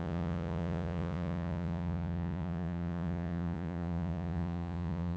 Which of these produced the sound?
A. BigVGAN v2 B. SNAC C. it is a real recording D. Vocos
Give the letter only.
D